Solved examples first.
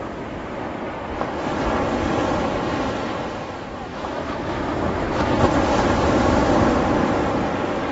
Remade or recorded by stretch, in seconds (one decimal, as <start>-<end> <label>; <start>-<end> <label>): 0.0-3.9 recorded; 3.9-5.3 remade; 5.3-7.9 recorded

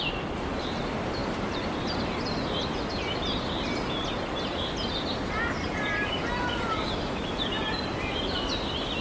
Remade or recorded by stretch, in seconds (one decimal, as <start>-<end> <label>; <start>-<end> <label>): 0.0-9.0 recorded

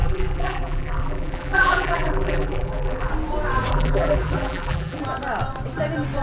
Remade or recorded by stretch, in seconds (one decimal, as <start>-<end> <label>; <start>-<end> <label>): 0.0-3.1 remade; 3.1-3.7 recorded; 3.7-5.0 remade; 5.0-6.2 recorded